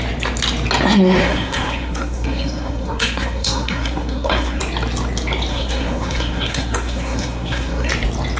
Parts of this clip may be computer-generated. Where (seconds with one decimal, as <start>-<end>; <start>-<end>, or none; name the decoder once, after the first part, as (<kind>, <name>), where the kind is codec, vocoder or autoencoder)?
1.2-4.6 (codec, SNAC); 5.5-7.9